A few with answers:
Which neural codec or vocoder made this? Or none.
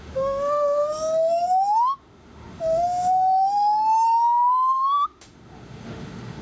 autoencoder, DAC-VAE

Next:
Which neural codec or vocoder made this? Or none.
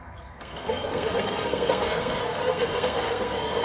codec, SNAC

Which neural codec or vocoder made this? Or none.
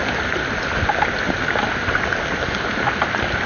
none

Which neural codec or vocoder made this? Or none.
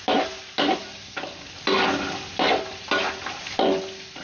none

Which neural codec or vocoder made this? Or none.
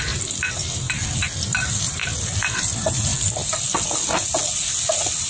none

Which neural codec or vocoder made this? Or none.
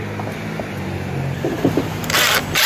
none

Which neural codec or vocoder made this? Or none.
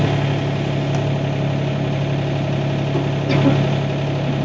none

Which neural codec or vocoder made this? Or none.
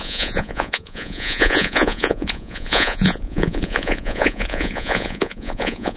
vocoder, Vocos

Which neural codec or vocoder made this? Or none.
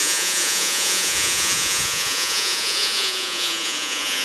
vocoder, Vocos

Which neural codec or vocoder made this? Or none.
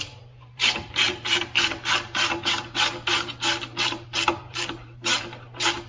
vocoder, BigVGAN v2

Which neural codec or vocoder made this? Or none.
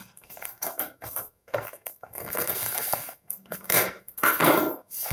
codec, SNAC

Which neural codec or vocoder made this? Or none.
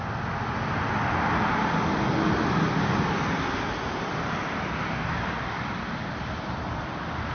none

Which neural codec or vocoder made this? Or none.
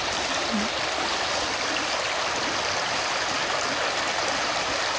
none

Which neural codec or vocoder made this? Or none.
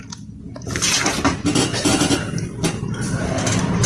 none